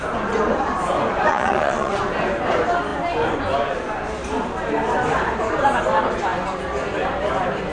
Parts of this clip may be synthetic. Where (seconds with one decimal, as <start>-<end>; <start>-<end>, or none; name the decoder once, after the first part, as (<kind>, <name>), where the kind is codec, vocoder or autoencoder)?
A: 1.3-2.0 (vocoder, Vocos)